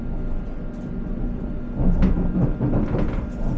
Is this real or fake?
real